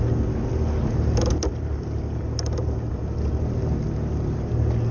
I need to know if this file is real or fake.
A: real